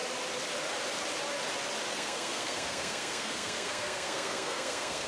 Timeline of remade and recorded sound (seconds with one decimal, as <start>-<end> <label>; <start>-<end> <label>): 0.0-1.9 recorded; 1.9-5.1 remade